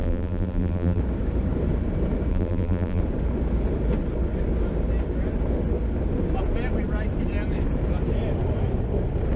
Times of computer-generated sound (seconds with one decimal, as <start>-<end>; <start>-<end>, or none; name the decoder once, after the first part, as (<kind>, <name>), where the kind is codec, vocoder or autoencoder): 0.0-1.0 (vocoder, BigVGAN v2); 2.3-3.0